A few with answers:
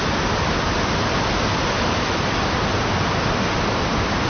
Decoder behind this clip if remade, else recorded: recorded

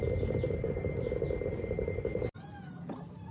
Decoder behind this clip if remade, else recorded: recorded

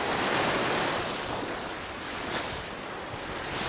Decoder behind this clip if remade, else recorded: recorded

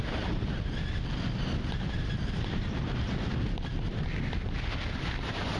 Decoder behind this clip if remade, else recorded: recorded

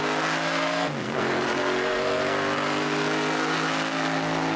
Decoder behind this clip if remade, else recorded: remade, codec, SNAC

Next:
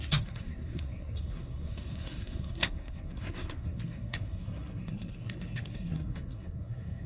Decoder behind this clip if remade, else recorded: remade, codec, SNAC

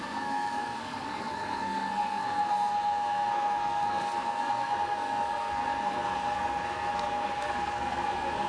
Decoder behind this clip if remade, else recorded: remade, codec, SNAC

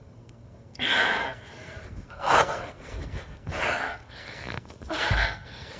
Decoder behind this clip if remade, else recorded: remade, codec, SNAC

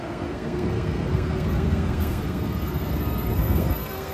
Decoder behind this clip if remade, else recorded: remade, codec, SNAC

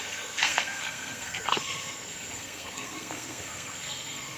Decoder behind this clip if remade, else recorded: remade, codec, SNAC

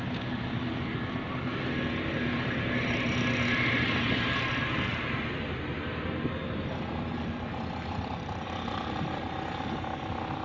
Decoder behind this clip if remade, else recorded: recorded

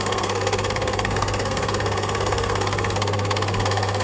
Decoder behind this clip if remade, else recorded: remade, codec, SNAC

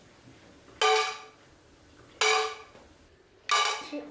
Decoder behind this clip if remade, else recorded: recorded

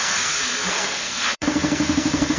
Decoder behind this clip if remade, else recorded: remade, codec, SNAC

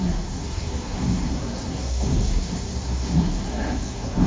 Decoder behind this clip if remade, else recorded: remade, codec, SNAC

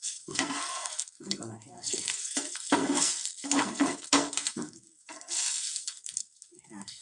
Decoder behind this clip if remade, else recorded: remade, codec, SNAC